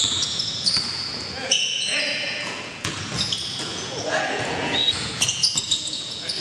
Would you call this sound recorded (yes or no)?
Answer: no